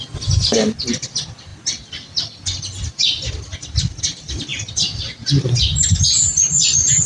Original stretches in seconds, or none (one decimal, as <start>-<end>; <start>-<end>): 0.0-7.1